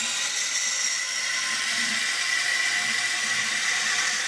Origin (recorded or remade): recorded